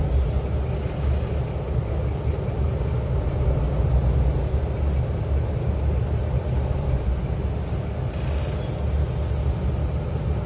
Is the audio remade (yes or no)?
no